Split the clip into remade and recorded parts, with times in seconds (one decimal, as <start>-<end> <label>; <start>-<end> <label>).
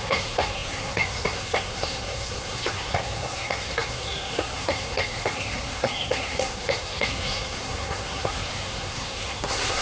0.0-9.8 remade